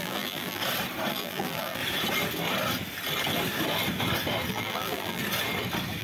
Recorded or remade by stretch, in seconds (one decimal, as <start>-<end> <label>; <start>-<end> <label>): 0.0-0.6 remade; 0.6-1.1 recorded; 1.1-1.8 remade; 1.8-4.5 recorded; 4.5-5.2 remade; 5.2-6.0 recorded